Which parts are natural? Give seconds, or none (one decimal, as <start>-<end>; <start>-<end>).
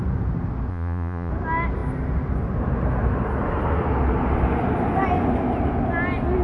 0.0-0.7; 1.3-6.4